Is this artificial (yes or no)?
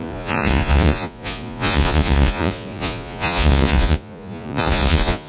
yes